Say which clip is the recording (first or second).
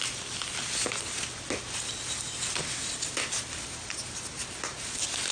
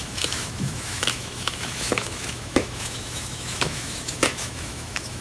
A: first